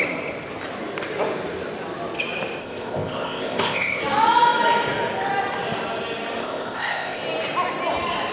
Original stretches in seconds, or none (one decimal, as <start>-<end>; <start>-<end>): 0.0-2.6; 4.0-6.4; 7.2-8.3